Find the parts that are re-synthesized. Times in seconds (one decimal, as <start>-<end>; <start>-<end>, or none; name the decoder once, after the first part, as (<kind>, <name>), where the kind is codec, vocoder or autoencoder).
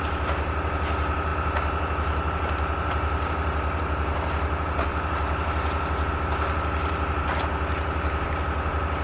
none